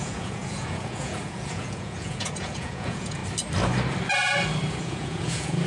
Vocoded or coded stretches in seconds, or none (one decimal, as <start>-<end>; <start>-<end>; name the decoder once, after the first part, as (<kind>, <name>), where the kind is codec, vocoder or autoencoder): 0.0-3.2 (vocoder, Vocos); 4.7-5.7